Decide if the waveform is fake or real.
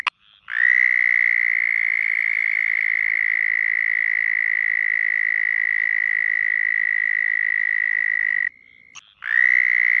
real